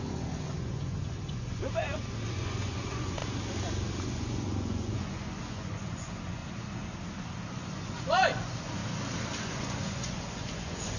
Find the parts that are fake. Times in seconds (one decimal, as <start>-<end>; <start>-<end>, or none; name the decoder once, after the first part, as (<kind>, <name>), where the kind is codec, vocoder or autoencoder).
0.0-1.6 (vocoder, Vocos); 2.3-3.2; 4.0-6.4; 7.5-8.8; 9.4-11.0